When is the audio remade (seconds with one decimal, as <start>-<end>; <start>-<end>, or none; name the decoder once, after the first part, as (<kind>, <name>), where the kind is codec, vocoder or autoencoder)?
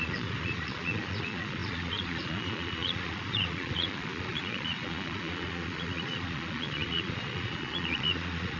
0.0-8.6 (vocoder, Vocos)